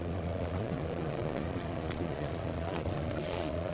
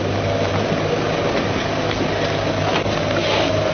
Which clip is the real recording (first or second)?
second